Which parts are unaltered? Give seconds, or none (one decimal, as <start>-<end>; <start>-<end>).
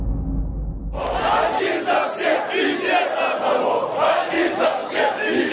0.8-4.1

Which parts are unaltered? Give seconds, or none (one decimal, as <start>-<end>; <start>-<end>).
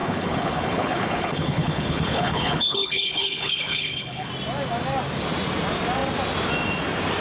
4.3-7.2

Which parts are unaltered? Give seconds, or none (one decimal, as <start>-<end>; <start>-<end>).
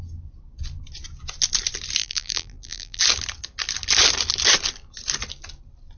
0.0-2.0; 3.0-6.0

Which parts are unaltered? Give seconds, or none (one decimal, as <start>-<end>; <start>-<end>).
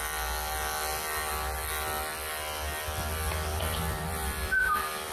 0.0-3.5